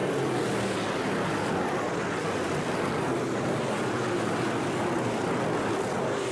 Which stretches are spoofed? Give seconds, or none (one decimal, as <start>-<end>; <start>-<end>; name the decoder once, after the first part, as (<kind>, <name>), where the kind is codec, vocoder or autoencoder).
none